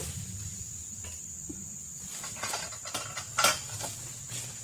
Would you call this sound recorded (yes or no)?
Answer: yes